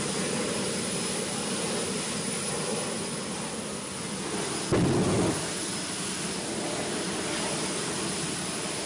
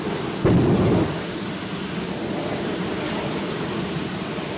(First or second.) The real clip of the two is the first